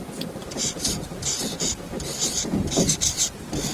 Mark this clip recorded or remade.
recorded